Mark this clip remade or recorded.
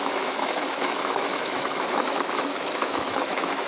remade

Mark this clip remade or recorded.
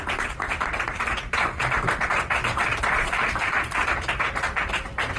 remade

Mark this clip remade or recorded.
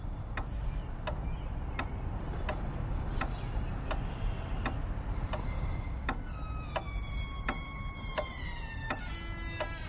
recorded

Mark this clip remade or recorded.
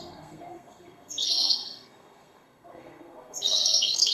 remade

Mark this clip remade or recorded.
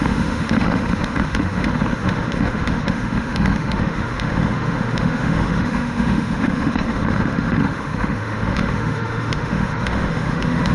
remade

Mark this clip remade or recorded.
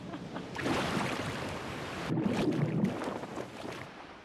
recorded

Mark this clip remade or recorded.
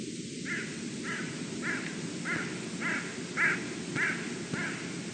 recorded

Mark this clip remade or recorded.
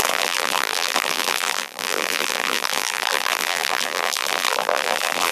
remade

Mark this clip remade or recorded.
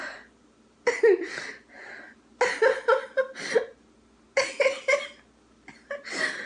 recorded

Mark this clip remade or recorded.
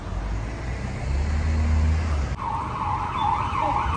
recorded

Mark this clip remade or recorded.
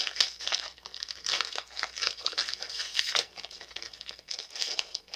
remade